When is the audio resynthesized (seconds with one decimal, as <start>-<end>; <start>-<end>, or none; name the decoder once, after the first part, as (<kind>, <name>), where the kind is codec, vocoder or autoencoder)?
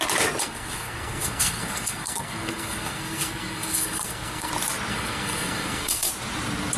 0.4-4.5 (codec, SNAC); 4.9-6.1